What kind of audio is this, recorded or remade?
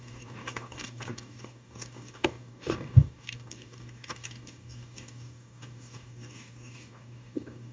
remade